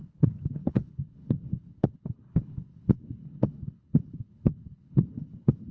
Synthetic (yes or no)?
yes